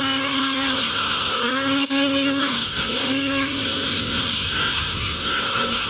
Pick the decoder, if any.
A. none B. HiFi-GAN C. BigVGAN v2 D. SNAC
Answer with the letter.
D